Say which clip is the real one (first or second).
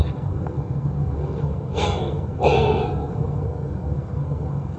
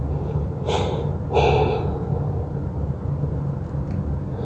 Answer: second